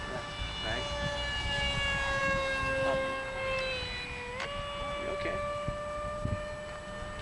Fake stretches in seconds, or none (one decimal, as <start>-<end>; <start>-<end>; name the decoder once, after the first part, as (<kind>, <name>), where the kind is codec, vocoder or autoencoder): none